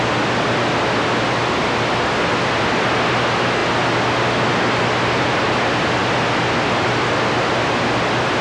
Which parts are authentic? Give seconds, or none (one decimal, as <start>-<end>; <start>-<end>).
0.0-8.4